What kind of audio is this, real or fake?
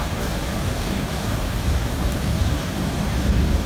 fake